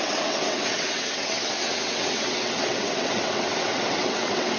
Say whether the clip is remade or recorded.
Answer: remade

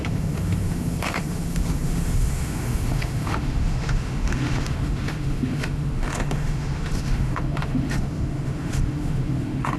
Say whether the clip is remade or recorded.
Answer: remade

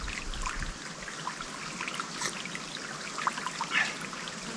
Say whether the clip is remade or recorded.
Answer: recorded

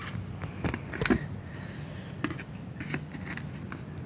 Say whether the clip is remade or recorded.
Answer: recorded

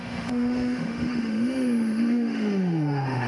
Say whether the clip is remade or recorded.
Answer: remade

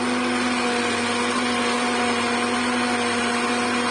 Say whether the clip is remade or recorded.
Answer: recorded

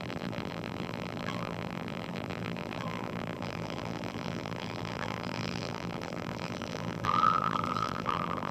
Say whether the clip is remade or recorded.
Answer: remade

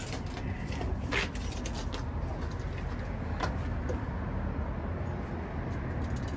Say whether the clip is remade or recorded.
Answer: recorded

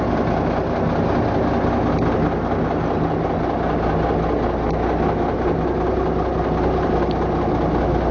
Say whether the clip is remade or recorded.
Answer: recorded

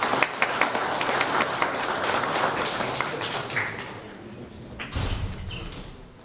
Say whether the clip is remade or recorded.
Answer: recorded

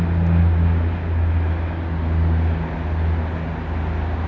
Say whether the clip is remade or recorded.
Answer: recorded